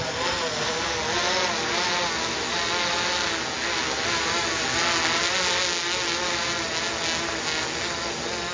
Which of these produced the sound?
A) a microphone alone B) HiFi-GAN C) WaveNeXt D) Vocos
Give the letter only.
A